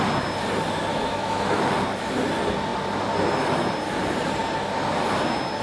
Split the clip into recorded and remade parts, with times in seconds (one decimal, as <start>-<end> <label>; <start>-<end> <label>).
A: 0.0-0.9 recorded; 0.9-1.6 remade; 1.6-5.6 recorded